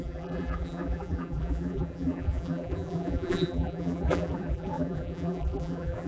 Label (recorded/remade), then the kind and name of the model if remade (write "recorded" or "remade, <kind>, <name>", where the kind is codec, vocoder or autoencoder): remade, vocoder, BigVGAN v2